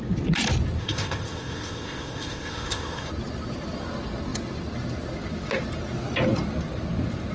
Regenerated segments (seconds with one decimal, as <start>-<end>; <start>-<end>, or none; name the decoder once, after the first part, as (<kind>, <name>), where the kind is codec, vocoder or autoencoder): 0.8-3.1 (codec, ZipCodec)

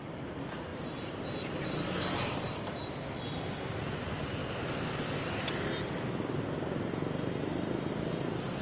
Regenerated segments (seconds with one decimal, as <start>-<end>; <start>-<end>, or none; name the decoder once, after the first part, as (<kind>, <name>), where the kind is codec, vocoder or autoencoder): 0.7-2.6 (vocoder, BigVGAN v2)

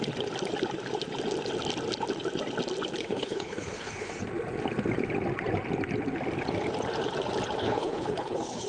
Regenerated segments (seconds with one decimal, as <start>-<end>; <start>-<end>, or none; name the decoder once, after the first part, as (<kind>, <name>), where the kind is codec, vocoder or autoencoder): 3.0-4.1 (codec, HILCodec); 7.6-8.7

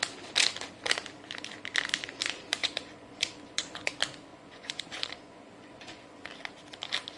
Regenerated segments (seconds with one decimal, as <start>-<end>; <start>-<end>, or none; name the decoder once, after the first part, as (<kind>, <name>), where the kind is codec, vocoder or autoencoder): 2.6-3.9 (vocoder, Vocos); 4.3-6.2

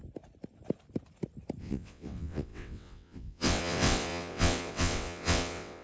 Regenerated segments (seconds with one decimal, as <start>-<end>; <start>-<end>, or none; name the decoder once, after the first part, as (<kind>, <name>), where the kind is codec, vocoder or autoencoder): 1.6-5.8 (vocoder, WaveNeXt)

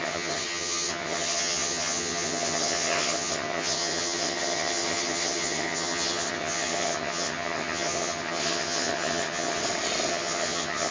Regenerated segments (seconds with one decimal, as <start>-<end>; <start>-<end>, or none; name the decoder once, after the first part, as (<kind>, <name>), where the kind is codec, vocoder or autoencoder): 0.0-9.6 (vocoder, HiFi-GAN); 10.1-10.9

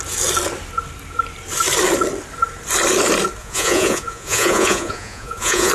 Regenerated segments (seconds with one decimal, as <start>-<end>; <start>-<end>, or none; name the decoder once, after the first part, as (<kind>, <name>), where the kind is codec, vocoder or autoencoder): 3.4-5.7 (vocoder, Vocos)